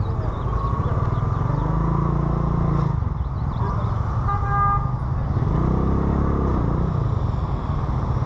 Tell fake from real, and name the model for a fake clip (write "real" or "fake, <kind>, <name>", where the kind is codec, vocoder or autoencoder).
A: real